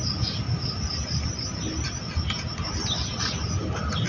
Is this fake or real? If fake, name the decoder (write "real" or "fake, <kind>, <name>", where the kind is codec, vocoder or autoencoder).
real